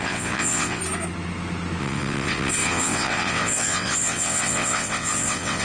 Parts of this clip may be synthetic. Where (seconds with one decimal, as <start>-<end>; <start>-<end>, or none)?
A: 0.0-0.8; 1.8-5.6